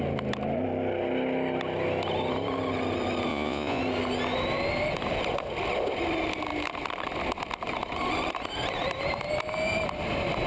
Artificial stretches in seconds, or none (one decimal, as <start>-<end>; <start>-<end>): 3.3-3.8